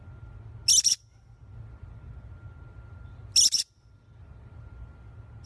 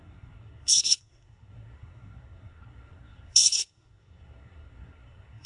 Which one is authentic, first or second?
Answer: first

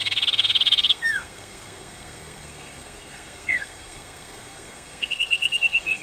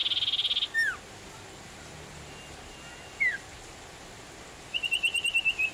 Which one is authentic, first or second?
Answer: second